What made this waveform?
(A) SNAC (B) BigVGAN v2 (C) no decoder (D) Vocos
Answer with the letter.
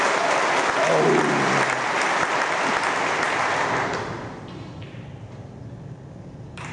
C